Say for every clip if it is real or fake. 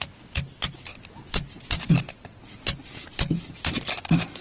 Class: real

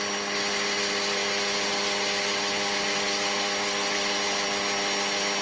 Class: real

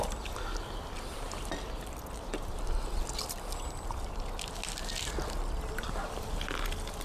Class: real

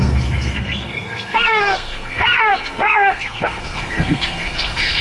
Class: fake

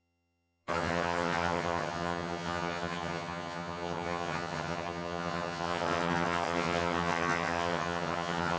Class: fake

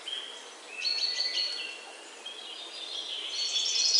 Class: real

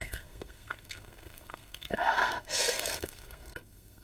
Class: fake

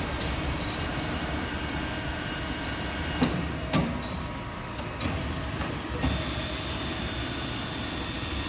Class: fake